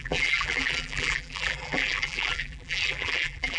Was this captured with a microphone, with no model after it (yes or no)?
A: no